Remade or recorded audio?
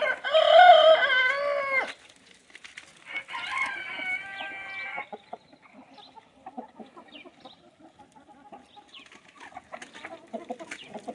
recorded